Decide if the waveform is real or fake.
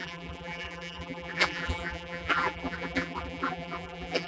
fake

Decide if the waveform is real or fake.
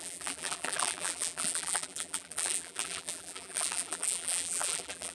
fake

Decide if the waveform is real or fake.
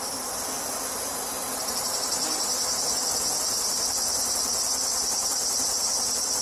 real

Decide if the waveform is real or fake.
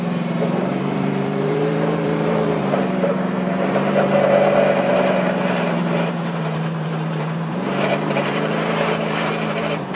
fake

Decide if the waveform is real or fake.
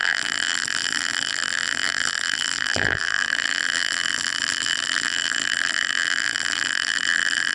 fake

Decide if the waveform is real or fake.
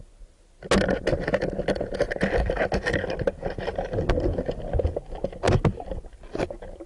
real